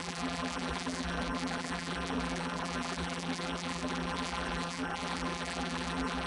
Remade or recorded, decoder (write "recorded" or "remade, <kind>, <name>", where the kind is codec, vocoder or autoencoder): remade, vocoder, BigVGAN v2